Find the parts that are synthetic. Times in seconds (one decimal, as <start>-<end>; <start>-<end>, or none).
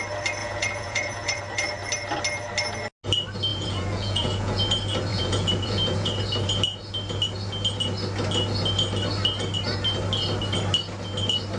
0.4-1.4; 3.5-4.6; 5.1-6.2